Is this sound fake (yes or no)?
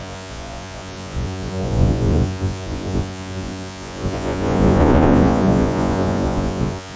yes